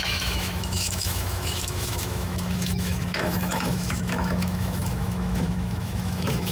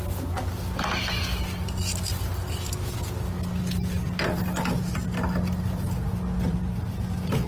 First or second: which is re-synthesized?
first